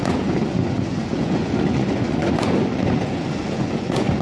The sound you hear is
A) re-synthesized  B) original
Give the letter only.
A